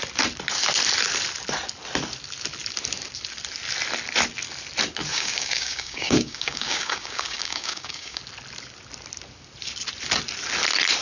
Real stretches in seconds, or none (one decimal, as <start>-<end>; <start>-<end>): 0.0-5.1; 8.2-11.0